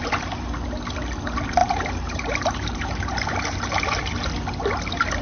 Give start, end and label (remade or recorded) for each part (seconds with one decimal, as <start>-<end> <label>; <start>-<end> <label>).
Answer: 0.0-1.6 recorded; 1.6-3.8 remade; 3.8-5.2 recorded